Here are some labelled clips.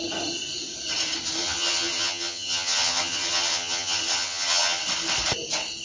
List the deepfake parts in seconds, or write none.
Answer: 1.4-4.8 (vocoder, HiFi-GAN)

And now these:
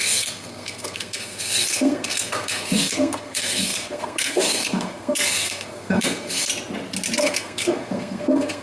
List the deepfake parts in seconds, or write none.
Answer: 0.0-6.5 (codec, SNAC); 7.2-8.6

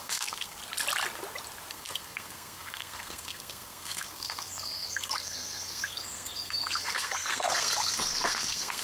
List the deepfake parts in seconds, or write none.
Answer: 0.0-0.6 (codec, SNAC); 1.7-8.8

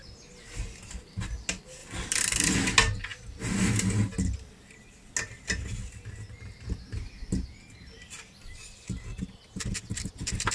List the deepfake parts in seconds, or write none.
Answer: 1.8-2.5 (vocoder, BigVGAN v2)